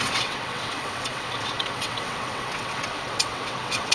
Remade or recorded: remade